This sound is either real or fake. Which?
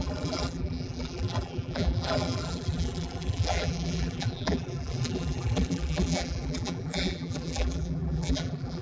fake